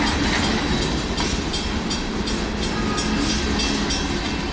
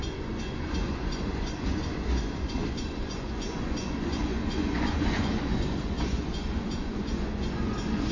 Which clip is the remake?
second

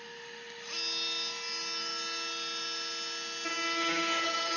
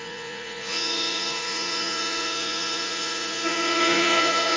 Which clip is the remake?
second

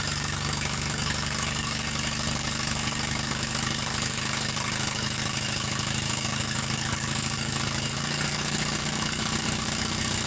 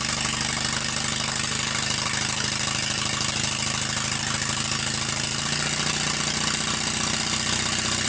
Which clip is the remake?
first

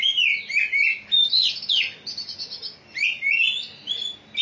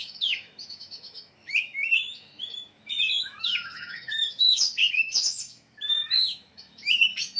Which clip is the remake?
second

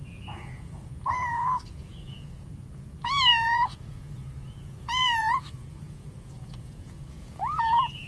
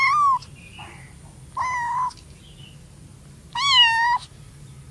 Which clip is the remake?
first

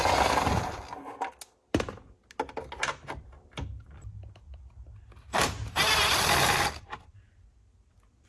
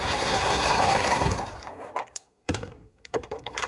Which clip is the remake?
second